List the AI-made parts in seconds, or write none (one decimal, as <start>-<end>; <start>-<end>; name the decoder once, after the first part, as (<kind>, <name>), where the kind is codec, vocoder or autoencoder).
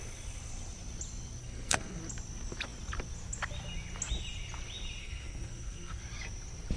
1.4-2.0 (codec, SNAC); 5.0-6.0